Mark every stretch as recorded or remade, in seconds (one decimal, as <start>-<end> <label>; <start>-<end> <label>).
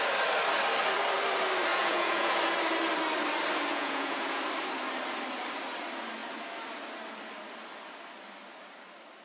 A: 0.0-1.7 recorded; 1.7-2.4 remade; 2.4-3.7 recorded; 3.7-4.4 remade; 4.4-9.2 recorded